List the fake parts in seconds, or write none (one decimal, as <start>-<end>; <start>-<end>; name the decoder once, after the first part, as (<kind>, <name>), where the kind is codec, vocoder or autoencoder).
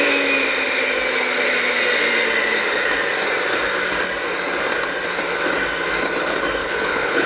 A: 6.6-7.3 (codec, HILCodec)